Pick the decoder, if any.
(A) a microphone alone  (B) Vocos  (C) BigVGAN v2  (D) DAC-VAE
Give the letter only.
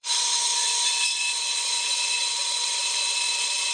B